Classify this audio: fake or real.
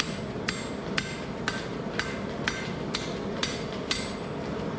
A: real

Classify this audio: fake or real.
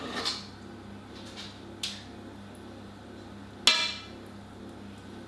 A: real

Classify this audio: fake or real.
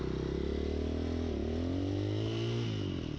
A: real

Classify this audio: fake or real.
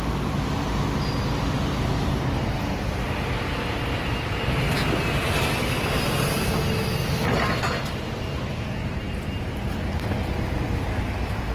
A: real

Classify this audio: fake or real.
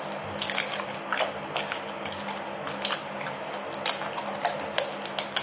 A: real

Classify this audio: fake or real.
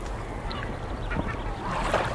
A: real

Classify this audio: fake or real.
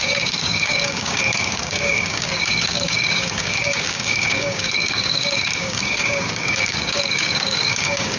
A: fake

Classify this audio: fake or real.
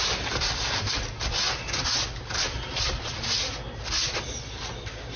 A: real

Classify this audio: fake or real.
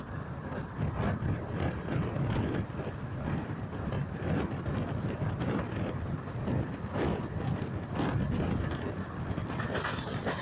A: real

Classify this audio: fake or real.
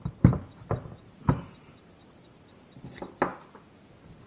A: real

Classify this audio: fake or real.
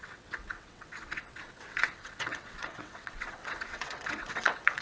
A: fake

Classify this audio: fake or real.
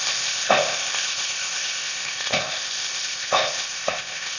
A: fake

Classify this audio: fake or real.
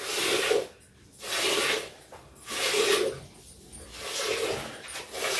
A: real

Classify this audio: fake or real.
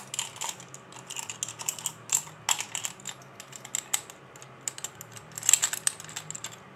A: real